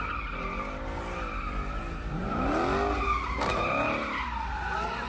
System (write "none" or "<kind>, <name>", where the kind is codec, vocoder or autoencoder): none